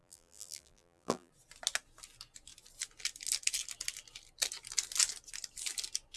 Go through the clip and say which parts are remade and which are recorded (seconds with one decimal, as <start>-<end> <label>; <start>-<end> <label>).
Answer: 0.0-1.3 remade; 1.3-6.2 recorded